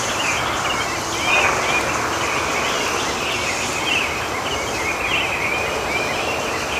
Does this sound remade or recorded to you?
recorded